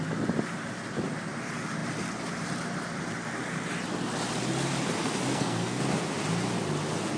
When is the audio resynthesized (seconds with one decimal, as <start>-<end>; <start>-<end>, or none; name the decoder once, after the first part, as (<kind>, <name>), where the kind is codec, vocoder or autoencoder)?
5.3-5.8 (codec, SNAC)

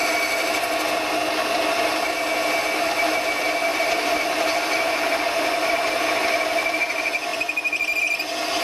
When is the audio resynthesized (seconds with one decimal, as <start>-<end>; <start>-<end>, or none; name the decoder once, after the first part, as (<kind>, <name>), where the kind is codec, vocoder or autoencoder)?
3.7-5.7 (vocoder, BigVGAN v2)

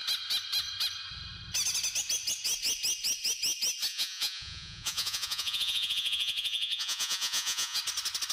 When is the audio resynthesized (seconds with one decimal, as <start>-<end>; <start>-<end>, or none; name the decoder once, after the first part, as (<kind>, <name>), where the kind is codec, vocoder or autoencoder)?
3.9-7.8 (vocoder, Vocos)

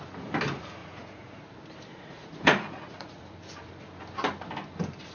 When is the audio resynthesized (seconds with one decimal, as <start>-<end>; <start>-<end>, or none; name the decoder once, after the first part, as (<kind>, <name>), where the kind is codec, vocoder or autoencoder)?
0.8-1.5 (vocoder, Vocos); 1.9-3.3

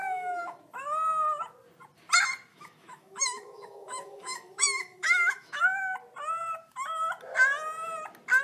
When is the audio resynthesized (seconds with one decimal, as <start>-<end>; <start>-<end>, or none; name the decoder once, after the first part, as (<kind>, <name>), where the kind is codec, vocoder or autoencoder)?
0.0-0.6 (autoencoder, DAC-VAE); 2.5-5.6

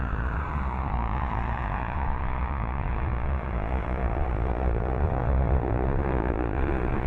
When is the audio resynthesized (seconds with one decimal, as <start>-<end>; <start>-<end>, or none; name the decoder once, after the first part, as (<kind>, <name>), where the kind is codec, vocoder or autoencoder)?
0.0-7.1 (vocoder, Vocos)

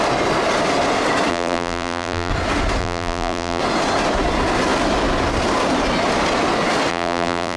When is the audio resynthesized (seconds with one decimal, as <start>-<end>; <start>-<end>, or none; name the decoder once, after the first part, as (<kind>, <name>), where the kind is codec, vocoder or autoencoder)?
1.3-2.3 (vocoder, BigVGAN v2); 2.8-3.6; 6.9-7.6

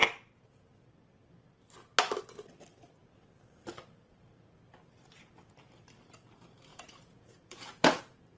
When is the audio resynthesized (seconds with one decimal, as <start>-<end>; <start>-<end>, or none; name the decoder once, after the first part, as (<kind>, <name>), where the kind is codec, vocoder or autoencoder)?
6.7-8.0 (vocoder, Vocos)